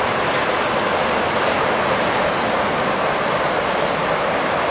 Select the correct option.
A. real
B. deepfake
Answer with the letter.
A